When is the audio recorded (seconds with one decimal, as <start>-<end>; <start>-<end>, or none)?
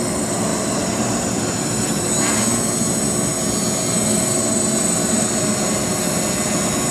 0.0-0.5; 2.1-6.9